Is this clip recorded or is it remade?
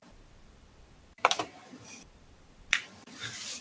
remade